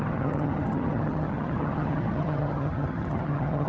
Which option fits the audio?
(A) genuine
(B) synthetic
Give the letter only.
B